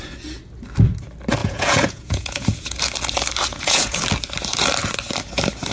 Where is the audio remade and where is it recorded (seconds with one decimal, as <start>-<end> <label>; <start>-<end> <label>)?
0.0-1.4 recorded; 1.4-2.8 remade; 2.8-3.5 recorded; 3.5-4.0 remade; 4.0-5.7 recorded